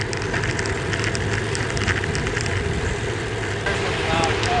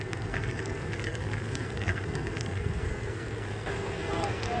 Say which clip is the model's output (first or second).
second